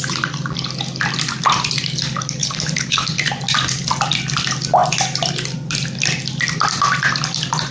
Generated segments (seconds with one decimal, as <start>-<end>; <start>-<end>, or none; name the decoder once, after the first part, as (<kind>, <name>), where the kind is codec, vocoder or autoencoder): 2.4-3.1 (codec, HILCodec)